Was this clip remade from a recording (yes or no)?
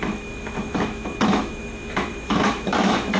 yes